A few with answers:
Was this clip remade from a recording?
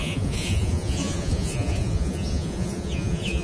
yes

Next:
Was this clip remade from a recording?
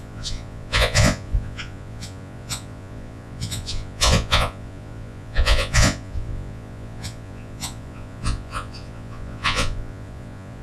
yes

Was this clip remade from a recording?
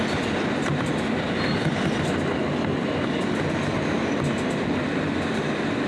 no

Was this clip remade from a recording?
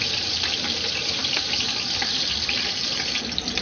no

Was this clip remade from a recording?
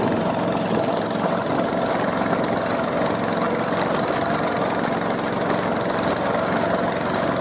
no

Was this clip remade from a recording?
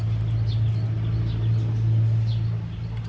no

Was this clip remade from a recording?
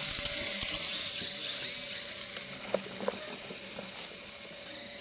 no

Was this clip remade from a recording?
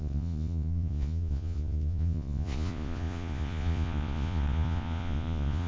yes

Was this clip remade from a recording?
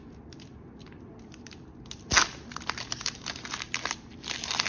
no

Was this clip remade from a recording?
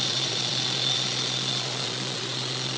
yes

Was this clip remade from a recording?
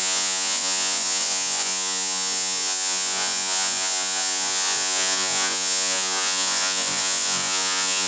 yes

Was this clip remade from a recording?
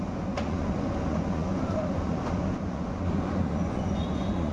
yes